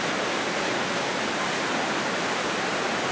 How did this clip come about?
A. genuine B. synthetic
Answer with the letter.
A